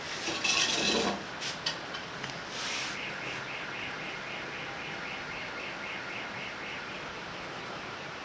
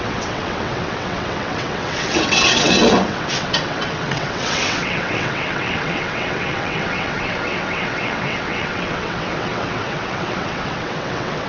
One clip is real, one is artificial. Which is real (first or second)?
first